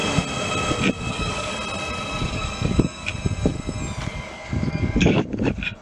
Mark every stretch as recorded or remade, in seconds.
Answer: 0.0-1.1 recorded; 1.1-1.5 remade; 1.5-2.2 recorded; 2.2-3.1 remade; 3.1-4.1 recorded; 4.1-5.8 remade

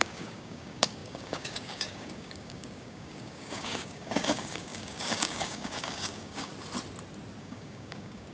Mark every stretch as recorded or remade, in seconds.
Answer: 0.0-6.5 remade; 6.5-7.4 recorded; 7.4-8.3 remade

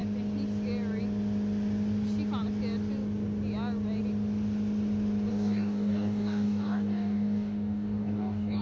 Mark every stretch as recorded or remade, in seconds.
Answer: 0.0-5.3 recorded; 5.3-8.6 remade